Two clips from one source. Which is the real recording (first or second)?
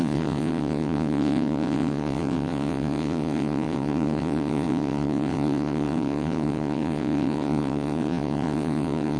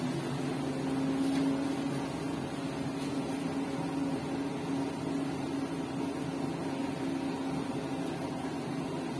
second